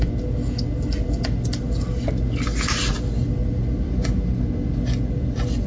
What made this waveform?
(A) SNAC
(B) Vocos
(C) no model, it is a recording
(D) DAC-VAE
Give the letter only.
C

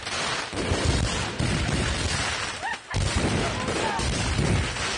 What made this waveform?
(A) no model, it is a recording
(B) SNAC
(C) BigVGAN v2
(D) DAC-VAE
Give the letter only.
A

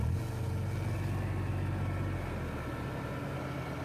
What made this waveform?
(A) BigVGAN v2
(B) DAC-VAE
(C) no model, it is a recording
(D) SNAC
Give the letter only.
C